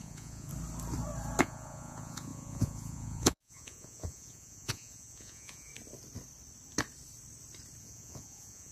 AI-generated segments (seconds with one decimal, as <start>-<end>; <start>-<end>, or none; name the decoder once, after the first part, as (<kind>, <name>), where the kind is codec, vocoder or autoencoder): 0.0-0.5 (vocoder, Vocos); 1.4-5.7; 7.8-8.7